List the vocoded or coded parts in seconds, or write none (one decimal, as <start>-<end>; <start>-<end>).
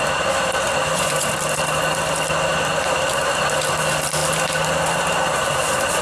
0.8-1.3